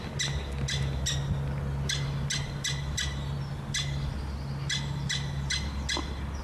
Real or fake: real